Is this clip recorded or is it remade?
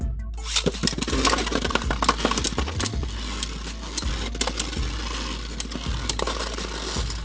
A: recorded